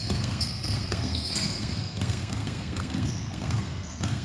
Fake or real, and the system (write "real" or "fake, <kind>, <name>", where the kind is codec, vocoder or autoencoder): fake, codec, SNAC